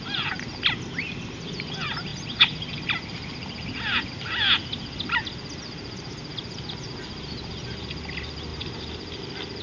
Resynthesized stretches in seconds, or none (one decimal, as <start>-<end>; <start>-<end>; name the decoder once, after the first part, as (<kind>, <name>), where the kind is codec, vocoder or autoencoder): 8.5-9.2 (vocoder, BigVGAN v2)